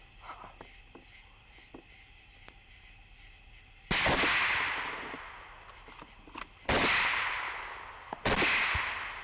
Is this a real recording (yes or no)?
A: yes